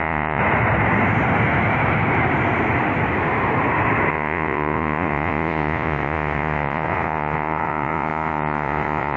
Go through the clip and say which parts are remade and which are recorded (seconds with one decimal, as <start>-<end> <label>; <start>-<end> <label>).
0.0-0.4 remade; 0.4-4.1 recorded; 4.1-9.2 remade